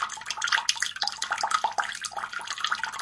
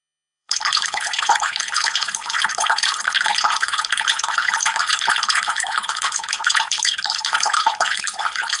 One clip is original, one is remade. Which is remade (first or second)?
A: second